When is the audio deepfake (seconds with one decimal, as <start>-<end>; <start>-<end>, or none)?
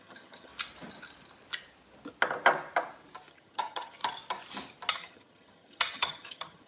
0.0-0.5; 3.3-4.0; 4.9-6.7